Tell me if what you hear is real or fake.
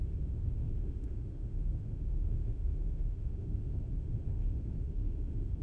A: fake